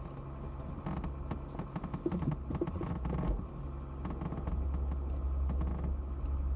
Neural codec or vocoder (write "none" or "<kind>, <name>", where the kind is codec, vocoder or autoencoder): none